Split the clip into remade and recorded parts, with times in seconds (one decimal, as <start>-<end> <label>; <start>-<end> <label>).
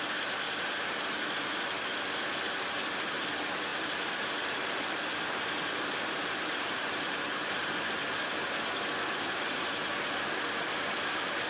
0.0-3.7 recorded; 3.7-8.0 remade; 8.0-11.5 recorded